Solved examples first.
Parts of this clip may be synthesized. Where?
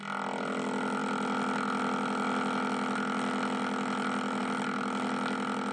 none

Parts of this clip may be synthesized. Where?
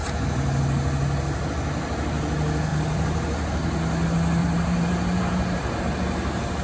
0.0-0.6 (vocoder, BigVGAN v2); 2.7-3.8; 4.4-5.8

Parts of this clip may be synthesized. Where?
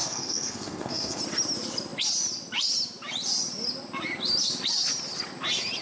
0.0-1.2 (codec, SNAC)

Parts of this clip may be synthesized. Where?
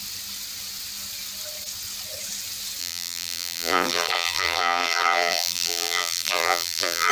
2.8-7.1 (vocoder, BigVGAN v2)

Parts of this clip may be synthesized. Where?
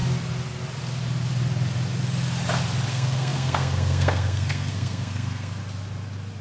2.9-5.6 (codec, SNAC)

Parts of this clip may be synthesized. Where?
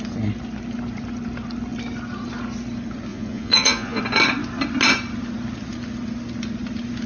3.1-4.0 (vocoder, Vocos)